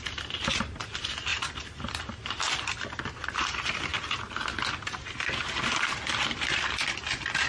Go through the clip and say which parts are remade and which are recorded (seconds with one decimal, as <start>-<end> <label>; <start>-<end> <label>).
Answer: 0.0-7.5 recorded